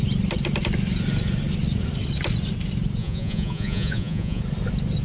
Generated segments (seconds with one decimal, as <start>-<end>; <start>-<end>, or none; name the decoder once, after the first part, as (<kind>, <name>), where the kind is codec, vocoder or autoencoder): 3.0-4.4 (vocoder, Vocos)